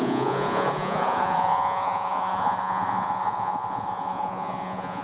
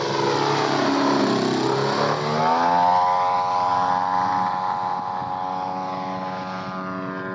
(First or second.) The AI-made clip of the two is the first